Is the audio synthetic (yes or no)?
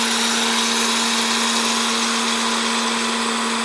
no